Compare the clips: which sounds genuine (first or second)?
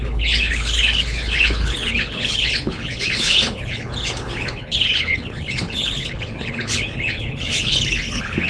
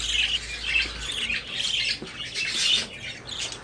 second